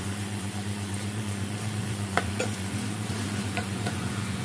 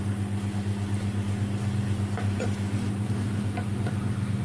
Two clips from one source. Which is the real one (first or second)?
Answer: second